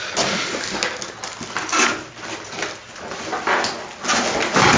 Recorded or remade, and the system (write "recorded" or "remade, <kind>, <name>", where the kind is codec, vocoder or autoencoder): recorded